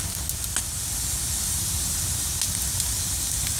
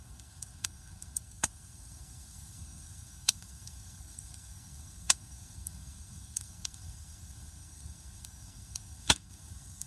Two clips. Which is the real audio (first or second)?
first